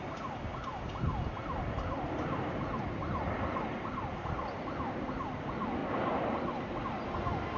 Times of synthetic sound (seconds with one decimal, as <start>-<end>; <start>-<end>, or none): 0.5-5.1; 5.8-6.8

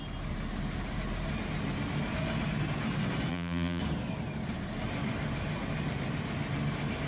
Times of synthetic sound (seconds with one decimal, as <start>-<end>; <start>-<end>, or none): 3.3-3.8

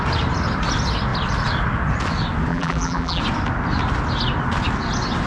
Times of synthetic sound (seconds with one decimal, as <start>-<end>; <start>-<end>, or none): 2.5-3.2